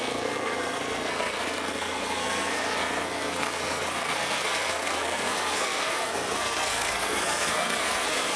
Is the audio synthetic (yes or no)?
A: yes